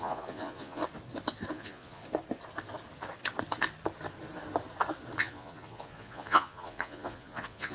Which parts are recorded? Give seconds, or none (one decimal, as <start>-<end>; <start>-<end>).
0.8-1.5; 2.0-5.2